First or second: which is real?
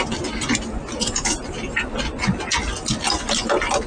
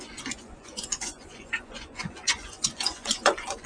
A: first